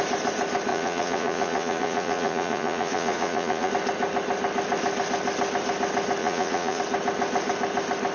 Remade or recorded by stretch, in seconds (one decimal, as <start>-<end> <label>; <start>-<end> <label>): 0.0-0.7 recorded; 0.7-3.7 remade; 3.7-6.2 recorded; 6.2-6.8 remade; 6.8-8.1 recorded